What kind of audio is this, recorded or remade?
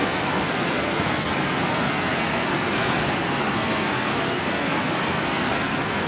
remade